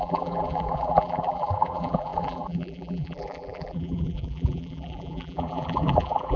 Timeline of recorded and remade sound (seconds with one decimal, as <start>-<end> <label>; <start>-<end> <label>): 0.0-6.4 remade